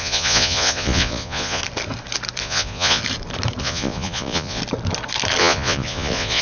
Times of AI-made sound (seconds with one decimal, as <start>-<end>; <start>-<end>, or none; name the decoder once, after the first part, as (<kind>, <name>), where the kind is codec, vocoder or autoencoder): 0.0-1.6 (vocoder, Vocos); 2.4-3.0; 3.6-4.6; 5.4-6.4